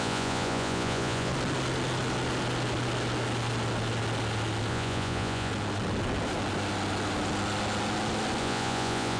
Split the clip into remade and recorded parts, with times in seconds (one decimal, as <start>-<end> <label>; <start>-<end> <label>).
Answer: 0.0-1.3 remade; 1.3-4.7 recorded; 4.7-5.5 remade; 5.5-8.4 recorded; 8.4-9.2 remade